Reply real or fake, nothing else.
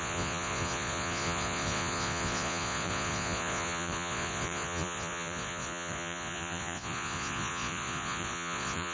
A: fake